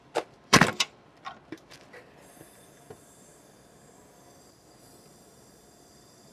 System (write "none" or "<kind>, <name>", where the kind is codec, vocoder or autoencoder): vocoder, BigVGAN v2